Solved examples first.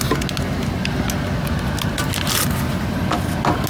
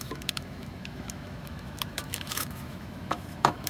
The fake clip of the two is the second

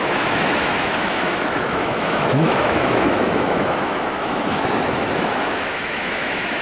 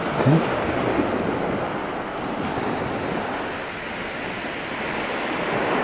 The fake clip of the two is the first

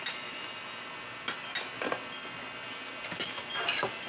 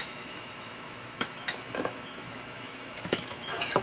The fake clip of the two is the second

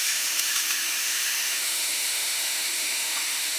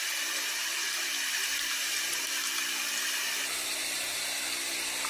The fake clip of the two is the first